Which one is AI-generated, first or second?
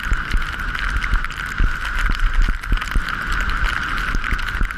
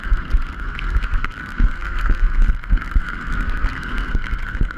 second